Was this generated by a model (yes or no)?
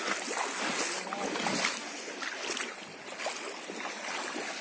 no